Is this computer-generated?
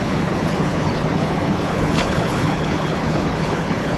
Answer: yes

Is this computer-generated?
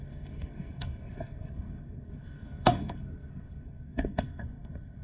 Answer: yes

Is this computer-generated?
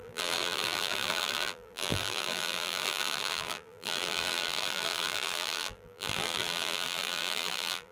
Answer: yes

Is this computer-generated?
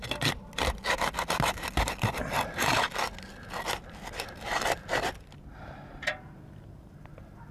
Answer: no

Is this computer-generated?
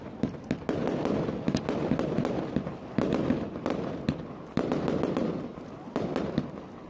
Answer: no